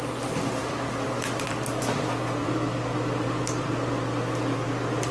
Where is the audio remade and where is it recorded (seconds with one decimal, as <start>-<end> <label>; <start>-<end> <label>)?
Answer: 0.0-0.6 recorded; 0.6-3.7 remade; 3.7-5.1 recorded